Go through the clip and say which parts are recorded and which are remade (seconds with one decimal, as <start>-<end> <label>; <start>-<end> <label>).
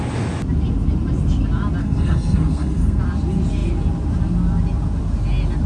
0.0-1.8 recorded; 1.8-3.0 remade; 3.0-5.7 recorded